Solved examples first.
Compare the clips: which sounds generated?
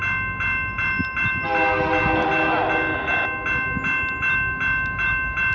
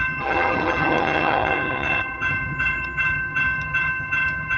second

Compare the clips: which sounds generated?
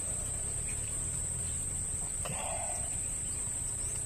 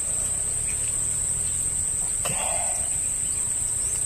first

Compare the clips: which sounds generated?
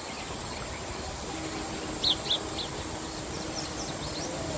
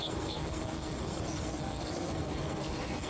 second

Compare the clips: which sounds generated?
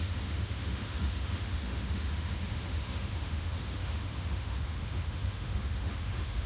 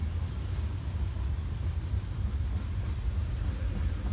first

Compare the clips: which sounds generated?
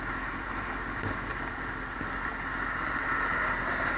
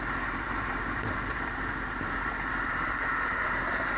second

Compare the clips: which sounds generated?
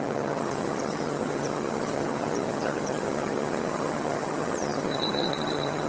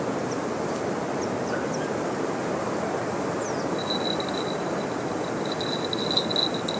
first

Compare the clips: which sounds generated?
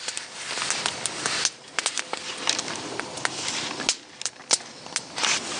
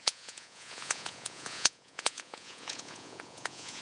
second